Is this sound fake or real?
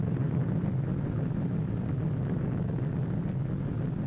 real